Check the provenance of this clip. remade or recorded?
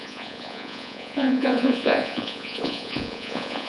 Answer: remade